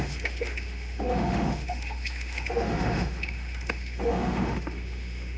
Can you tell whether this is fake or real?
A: fake